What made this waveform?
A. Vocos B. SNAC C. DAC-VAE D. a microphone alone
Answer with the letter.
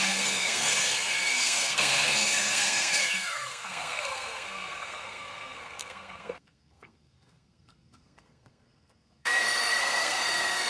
B